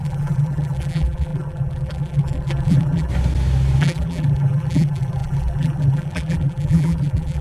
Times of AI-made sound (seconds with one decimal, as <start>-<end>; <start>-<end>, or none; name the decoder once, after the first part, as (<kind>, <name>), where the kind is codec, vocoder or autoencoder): 0.0-3.1 (vocoder, BigVGAN v2); 3.8-7.4